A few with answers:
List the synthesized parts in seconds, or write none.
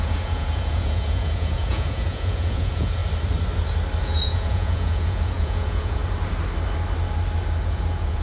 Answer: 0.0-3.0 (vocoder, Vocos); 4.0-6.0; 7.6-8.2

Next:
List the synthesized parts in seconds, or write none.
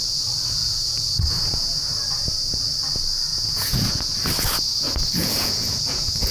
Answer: 0.6-1.8 (vocoder, Vocos); 3.3-4.1; 5.2-6.3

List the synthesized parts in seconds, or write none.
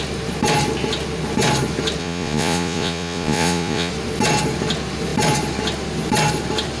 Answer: 2.0-3.9 (vocoder, Vocos)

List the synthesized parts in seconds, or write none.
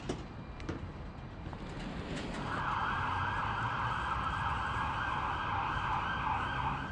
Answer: none